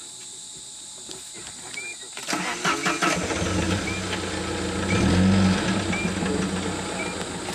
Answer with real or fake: real